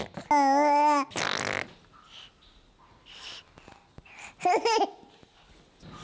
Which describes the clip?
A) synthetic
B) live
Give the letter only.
B